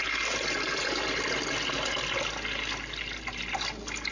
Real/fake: real